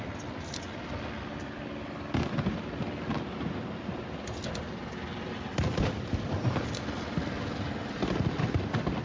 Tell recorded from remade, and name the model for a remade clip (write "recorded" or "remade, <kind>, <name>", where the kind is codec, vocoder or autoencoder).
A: recorded